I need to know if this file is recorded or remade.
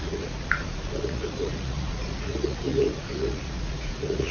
remade